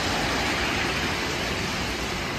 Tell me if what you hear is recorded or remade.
recorded